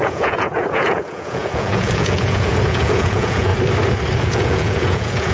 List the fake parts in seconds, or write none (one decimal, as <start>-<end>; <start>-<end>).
0.0-3.5; 4.2-5.3